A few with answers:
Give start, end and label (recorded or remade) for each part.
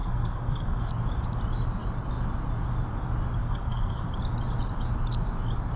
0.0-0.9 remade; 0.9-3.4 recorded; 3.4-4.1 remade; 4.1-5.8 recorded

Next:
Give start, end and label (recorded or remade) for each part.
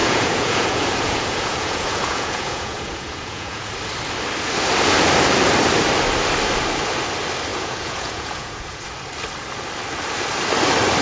0.0-3.7 remade; 3.7-7.5 recorded; 7.5-8.8 remade; 8.8-11.0 recorded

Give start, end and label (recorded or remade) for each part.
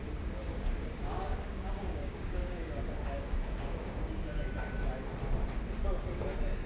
0.0-0.4 recorded; 0.4-4.4 remade; 4.4-6.7 recorded